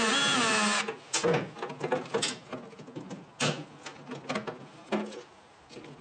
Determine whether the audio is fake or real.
real